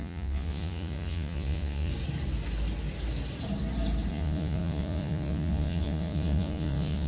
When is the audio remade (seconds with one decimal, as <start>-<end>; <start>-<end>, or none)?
0.0-1.9; 4.1-7.1